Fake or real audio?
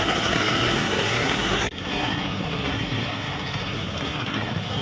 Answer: fake